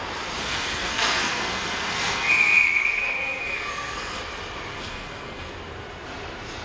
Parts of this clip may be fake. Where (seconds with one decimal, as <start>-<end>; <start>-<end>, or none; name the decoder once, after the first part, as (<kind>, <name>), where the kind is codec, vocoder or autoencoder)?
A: 0.4-4.2 (codec, SNAC); 4.8-5.5